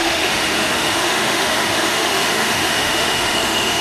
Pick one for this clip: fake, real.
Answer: fake